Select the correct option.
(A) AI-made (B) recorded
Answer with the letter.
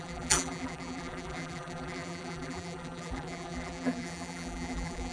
A